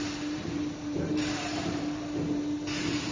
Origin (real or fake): fake